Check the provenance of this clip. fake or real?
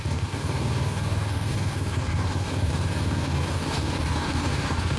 fake